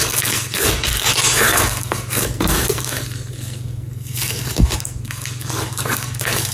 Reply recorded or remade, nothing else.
remade